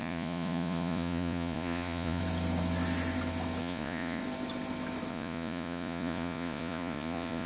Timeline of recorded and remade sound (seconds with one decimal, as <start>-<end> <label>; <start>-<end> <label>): 0.0-2.2 remade; 2.2-3.6 recorded; 3.6-4.2 remade; 4.2-5.1 recorded; 5.1-7.5 remade